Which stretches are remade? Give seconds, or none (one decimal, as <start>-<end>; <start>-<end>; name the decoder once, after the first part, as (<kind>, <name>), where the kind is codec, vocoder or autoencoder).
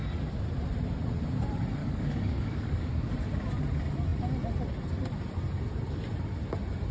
1.8-3.1 (codec, DAC)